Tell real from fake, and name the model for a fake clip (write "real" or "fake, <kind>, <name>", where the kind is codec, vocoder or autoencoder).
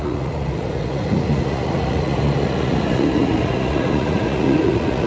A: fake, vocoder, Vocos